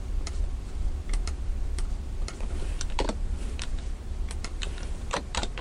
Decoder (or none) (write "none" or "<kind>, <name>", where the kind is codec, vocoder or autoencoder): vocoder, BigVGAN v2